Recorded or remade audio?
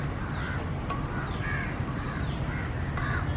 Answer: recorded